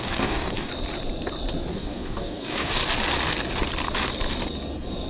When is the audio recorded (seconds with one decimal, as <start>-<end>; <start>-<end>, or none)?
0.7-1.7; 2.8-5.1

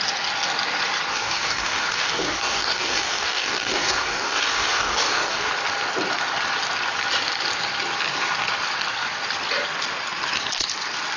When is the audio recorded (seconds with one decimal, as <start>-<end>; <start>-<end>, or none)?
0.0-1.1; 5.5-11.2

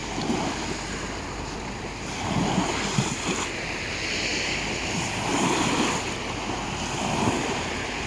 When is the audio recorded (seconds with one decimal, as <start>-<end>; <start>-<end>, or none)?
0.0-8.1